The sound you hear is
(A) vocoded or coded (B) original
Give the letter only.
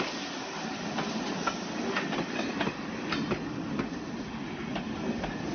B